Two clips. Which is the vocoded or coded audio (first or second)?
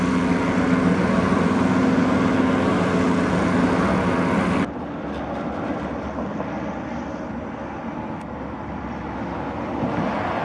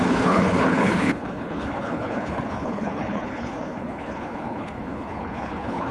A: second